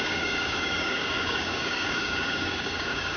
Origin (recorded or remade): remade